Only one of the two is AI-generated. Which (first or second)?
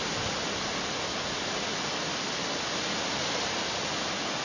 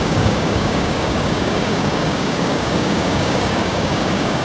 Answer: second